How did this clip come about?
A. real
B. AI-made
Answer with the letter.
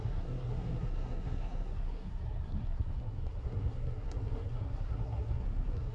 B